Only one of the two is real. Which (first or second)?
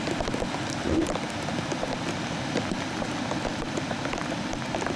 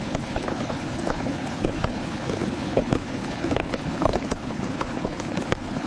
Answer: first